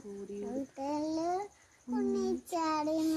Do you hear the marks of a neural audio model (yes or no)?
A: no